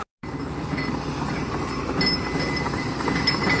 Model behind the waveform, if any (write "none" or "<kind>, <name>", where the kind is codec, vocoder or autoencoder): none